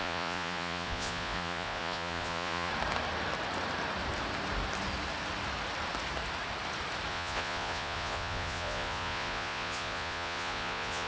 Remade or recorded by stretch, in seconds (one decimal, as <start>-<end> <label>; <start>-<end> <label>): 0.0-2.7 remade; 2.7-7.1 recorded; 7.1-11.1 remade